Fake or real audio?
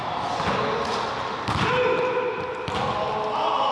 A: real